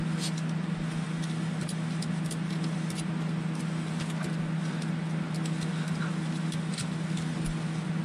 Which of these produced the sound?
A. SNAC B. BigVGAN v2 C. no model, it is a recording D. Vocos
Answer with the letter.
C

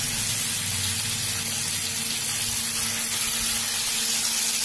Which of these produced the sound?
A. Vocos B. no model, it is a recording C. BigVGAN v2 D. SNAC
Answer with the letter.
B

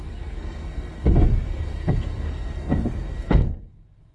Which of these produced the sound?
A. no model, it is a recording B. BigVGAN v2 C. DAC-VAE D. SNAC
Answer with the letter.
D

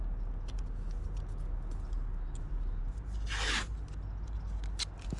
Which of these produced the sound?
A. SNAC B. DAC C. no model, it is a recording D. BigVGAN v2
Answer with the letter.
C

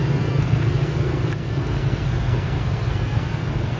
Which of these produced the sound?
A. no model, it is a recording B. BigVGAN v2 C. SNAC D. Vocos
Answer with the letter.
C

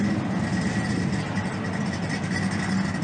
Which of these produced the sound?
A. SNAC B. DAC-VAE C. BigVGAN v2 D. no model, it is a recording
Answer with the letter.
D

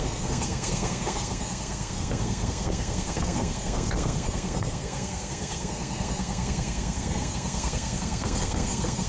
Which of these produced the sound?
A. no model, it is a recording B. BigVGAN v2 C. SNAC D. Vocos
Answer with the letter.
C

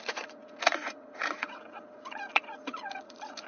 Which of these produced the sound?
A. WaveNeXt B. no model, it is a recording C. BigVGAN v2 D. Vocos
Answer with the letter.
D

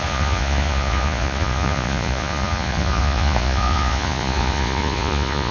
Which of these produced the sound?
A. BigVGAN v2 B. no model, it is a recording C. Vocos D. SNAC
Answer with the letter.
C